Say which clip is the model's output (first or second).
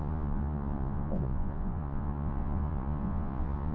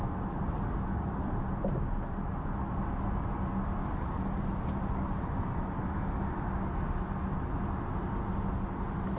first